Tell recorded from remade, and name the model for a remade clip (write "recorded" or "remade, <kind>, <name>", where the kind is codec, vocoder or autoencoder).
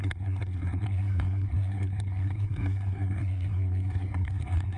remade, codec, SNAC